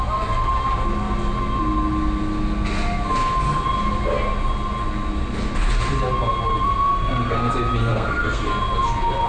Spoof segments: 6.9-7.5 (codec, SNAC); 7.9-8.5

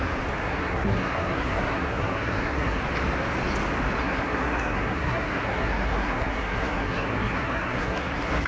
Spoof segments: 0.4-2.8 (codec, SNAC); 4.0-8.5

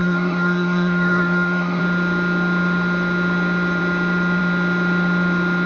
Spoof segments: 0.0-1.8 (codec, SNAC)